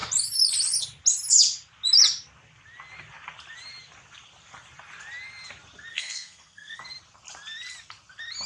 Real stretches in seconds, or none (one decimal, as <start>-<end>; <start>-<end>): 0.0-5.9; 6.8-8.5